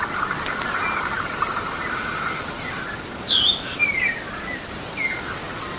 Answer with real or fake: real